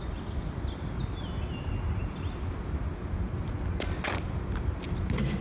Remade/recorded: recorded